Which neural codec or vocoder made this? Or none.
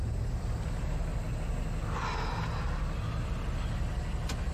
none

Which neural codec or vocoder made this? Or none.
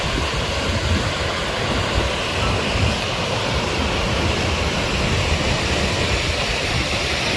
none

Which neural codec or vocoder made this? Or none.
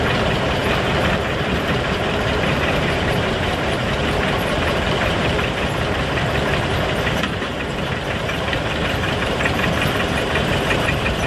vocoder, BigVGAN v2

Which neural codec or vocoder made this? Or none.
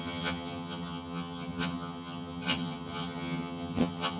vocoder, HiFi-GAN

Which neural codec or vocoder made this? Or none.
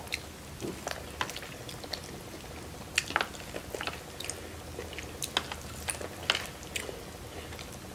none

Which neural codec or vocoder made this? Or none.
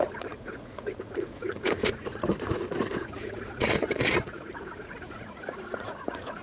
vocoder, Vocos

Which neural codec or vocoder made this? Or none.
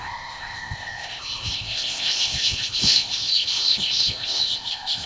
codec, ZipCodec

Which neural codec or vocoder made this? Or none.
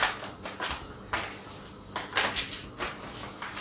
none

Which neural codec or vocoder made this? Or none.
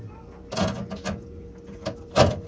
none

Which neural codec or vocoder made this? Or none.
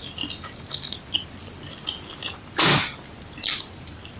none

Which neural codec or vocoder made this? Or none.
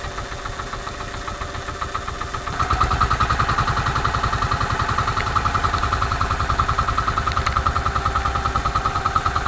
none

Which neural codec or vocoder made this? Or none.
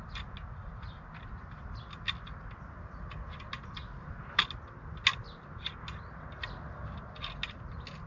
none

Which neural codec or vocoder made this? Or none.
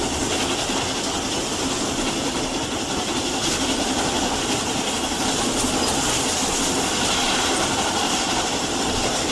none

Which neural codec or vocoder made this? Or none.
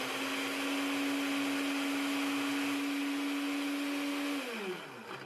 none